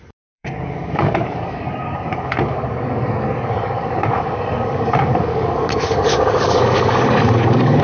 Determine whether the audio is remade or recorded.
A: remade